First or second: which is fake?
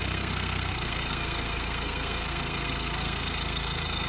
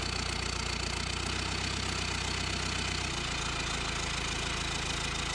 first